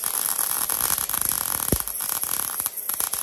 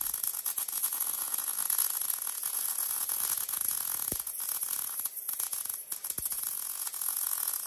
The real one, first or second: first